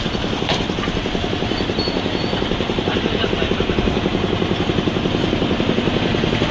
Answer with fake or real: fake